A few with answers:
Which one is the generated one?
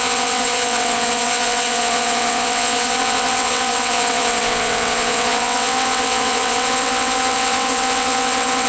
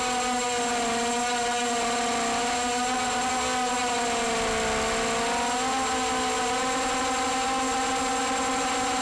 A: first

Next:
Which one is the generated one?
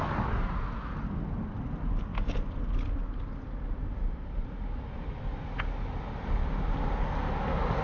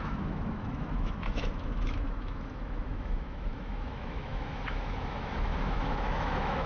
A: second